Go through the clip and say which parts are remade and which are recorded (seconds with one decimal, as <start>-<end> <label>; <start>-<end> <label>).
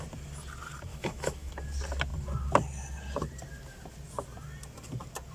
0.0-0.9 recorded; 0.9-1.5 remade; 1.5-5.3 recorded